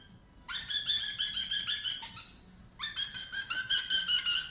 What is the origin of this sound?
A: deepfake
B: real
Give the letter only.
B